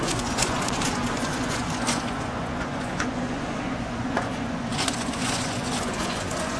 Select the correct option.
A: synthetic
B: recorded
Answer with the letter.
A